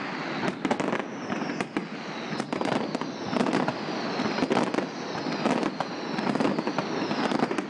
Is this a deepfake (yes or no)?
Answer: no